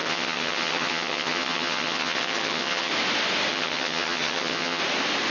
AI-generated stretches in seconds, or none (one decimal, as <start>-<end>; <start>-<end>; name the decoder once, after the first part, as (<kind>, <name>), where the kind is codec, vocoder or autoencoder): 0.0-2.9 (vocoder, HiFi-GAN); 3.5-4.8